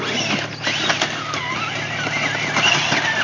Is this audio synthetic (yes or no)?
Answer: no